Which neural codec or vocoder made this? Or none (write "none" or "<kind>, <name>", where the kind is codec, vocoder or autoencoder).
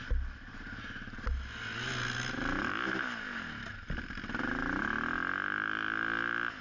none